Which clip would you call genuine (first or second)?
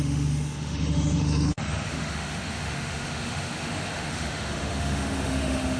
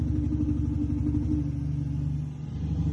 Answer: second